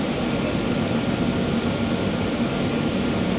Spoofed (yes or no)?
no